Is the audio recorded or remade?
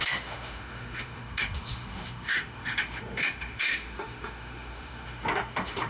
remade